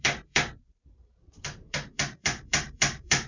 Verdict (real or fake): fake